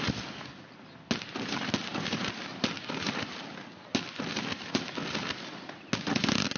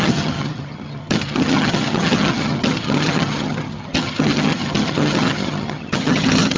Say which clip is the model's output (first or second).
second